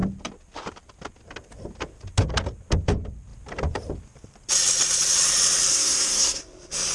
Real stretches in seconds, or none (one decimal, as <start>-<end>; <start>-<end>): 0.0-5.7; 6.4-6.9